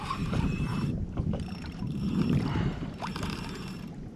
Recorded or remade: remade